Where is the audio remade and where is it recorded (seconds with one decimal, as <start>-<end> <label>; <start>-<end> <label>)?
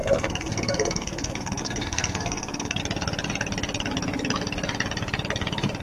0.0-2.8 remade; 2.8-5.8 recorded